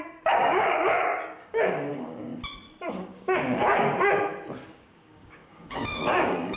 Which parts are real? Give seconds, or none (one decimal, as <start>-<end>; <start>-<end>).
2.3-2.9; 3.6-4.7

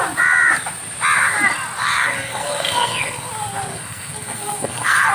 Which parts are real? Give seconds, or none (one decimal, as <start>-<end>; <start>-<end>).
0.0-1.8; 3.3-3.7

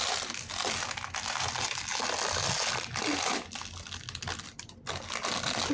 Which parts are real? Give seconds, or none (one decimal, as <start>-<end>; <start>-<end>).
0.0-5.7

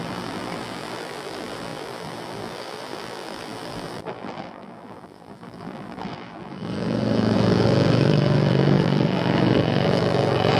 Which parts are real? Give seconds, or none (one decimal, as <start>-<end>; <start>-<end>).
none

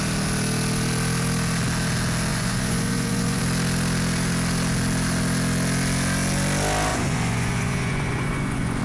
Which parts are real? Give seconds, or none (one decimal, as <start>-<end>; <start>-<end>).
0.0-2.3; 3.4-6.9

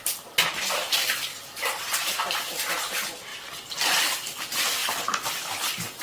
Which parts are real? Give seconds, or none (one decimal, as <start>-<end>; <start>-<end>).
0.0-6.0

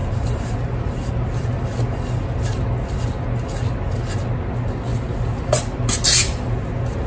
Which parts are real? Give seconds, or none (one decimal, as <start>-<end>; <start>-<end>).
1.1-4.9; 5.6-7.1

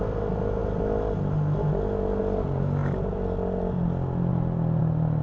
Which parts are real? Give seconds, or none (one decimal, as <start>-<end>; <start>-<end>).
0.0-5.2